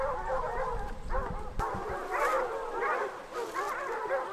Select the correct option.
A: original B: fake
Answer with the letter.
A